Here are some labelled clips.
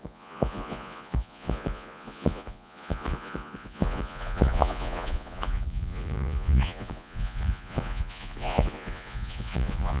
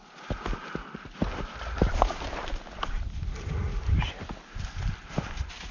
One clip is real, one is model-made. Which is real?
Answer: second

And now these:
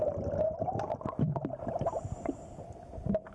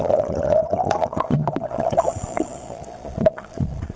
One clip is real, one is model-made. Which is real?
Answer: first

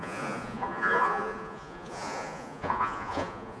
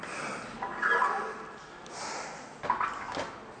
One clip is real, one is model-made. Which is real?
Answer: second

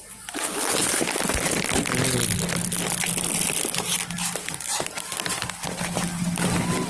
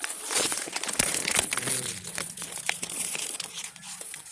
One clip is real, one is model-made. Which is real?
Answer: first